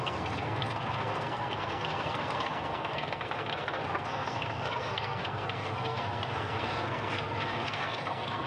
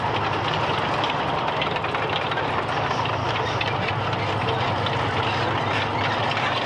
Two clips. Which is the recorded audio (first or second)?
second